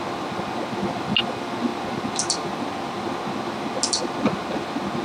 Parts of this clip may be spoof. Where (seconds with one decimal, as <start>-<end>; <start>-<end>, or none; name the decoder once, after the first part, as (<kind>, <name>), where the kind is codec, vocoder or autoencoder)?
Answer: none